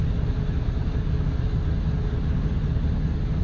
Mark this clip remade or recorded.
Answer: recorded